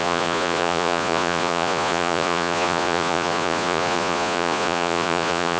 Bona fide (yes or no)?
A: no